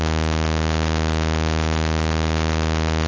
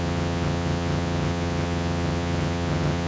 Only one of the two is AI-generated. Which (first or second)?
second